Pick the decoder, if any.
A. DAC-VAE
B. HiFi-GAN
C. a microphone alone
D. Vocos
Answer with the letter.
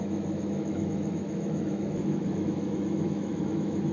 A